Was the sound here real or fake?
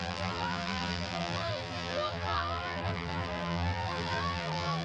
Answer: fake